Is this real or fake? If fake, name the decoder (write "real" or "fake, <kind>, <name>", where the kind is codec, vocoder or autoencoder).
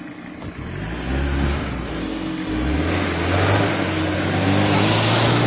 real